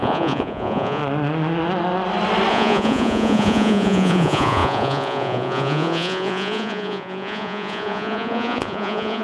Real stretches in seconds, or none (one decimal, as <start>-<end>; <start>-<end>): 1.0-2.5